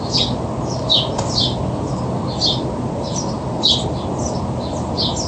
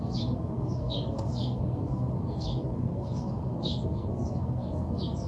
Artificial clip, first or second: second